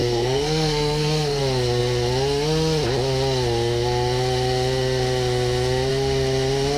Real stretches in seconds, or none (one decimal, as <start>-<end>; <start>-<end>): 1.4-6.8